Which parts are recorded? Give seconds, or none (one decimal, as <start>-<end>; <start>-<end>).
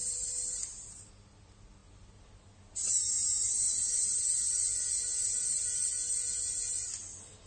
0.0-7.5